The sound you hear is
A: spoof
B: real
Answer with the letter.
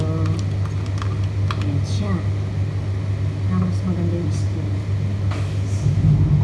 B